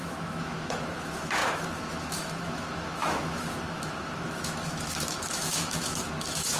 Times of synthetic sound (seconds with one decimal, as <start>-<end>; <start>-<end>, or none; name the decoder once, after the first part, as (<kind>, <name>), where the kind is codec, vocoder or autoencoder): 0.0-6.6 (autoencoder, DAC-VAE)